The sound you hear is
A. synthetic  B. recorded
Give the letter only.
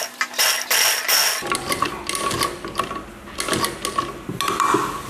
B